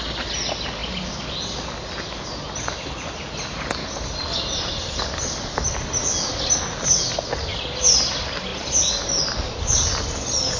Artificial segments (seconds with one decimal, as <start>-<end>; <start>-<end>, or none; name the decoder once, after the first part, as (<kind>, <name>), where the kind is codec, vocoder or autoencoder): none